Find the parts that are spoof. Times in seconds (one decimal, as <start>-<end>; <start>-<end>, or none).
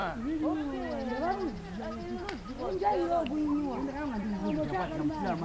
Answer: none